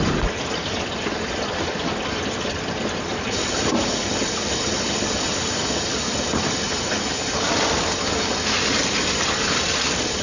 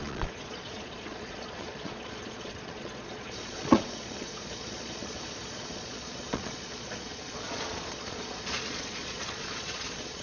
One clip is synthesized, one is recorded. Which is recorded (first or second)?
first